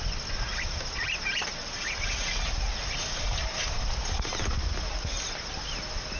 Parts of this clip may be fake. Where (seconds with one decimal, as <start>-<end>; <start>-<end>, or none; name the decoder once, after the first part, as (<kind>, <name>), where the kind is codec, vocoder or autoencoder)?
1.6-2.5 (vocoder, WaveNeXt)